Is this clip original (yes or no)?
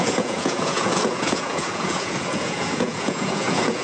no